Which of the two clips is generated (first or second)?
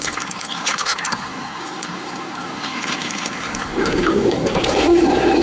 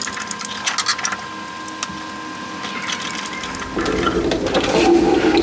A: first